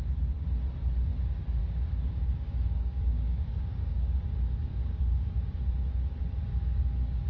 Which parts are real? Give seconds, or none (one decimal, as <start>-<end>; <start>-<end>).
0.0-1.6; 4.2-4.7; 5.6-6.5